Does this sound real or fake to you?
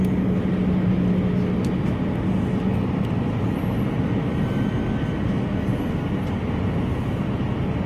real